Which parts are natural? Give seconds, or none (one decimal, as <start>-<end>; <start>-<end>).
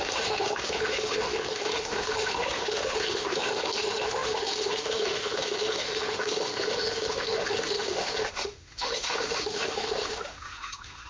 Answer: none